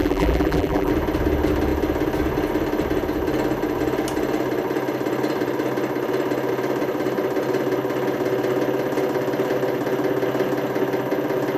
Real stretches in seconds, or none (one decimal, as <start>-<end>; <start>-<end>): 0.9-11.6